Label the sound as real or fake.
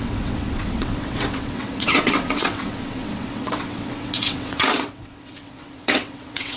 fake